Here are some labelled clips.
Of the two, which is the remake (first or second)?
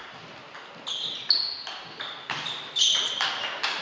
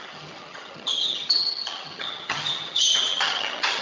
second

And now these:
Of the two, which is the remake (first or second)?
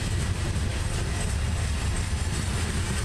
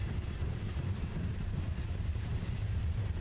second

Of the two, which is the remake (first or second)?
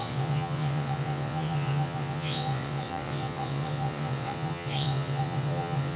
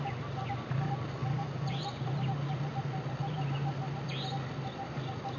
first